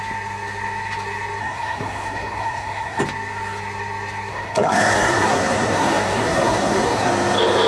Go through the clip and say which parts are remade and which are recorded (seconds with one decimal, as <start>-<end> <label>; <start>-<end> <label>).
0.0-1.4 recorded; 1.4-3.0 remade; 3.0-4.3 recorded; 4.3-7.1 remade; 7.1-7.7 recorded